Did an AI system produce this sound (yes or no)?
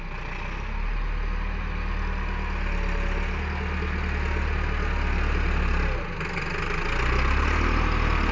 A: no